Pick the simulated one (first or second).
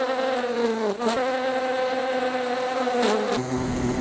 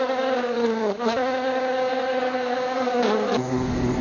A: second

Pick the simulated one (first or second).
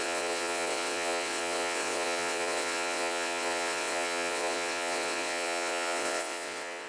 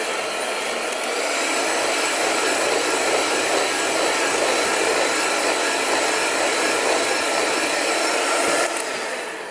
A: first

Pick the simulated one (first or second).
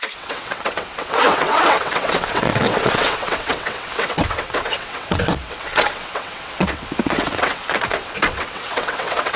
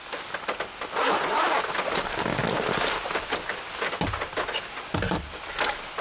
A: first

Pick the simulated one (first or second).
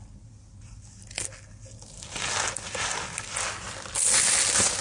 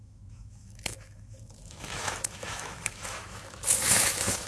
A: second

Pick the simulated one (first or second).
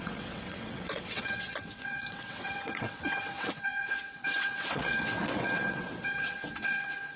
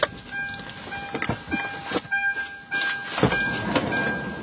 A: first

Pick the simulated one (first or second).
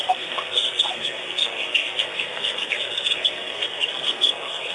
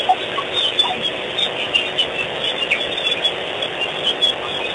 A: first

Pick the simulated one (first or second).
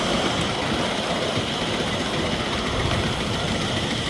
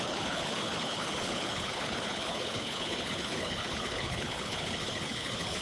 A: second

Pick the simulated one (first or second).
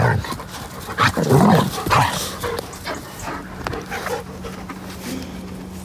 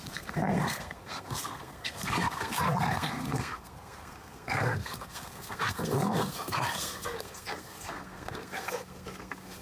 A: second